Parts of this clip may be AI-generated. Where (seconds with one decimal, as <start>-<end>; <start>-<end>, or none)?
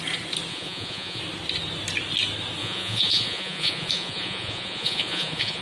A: 0.5-1.2; 2.6-5.6